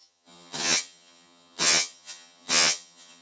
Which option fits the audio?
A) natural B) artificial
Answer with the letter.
B